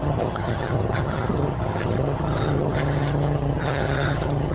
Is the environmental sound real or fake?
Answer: fake